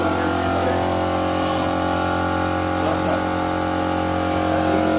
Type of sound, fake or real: real